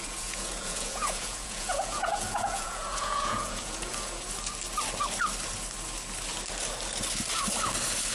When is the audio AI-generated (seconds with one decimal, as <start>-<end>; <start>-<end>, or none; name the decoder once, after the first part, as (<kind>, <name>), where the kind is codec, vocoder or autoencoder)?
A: 0.0-3.9 (vocoder, Vocos)